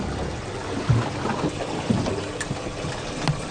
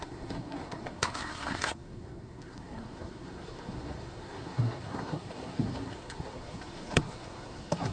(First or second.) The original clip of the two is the first